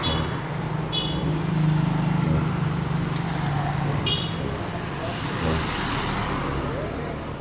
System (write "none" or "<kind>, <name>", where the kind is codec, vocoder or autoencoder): none